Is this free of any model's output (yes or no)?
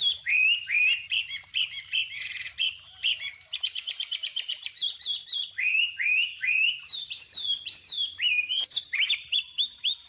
no